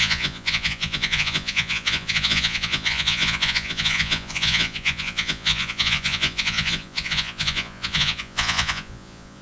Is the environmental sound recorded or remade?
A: remade